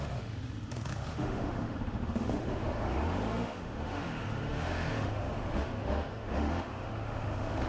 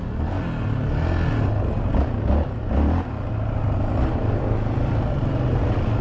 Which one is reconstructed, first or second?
first